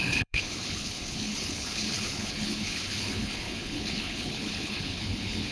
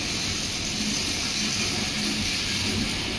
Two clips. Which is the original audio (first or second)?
second